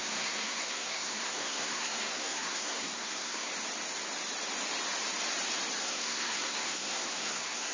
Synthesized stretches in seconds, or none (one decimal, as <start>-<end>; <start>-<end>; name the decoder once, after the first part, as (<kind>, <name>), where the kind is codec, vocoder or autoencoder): 0.0-3.5 (codec, SNAC); 5.8-7.7

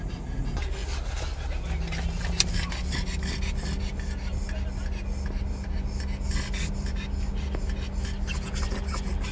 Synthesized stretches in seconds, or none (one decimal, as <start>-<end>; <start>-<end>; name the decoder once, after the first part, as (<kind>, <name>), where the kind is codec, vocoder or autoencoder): none

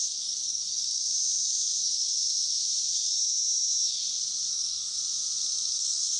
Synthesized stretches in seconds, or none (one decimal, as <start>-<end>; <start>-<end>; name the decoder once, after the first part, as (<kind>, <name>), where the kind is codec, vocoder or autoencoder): 0.0-0.8 (codec, SNAC); 4.5-5.0; 5.8-6.2

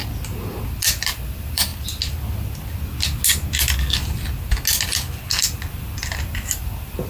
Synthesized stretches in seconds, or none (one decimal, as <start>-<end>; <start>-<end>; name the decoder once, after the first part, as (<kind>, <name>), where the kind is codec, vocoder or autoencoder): 0.8-1.7 (vocoder, BigVGAN v2); 5.4-7.1

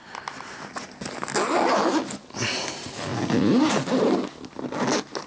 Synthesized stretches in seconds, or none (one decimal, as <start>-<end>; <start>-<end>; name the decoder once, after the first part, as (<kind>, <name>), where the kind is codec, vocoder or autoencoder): none